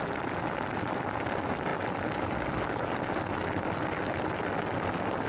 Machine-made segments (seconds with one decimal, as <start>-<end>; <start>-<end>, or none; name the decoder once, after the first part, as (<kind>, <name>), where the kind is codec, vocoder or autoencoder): none